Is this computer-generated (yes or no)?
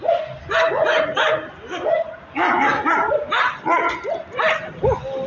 no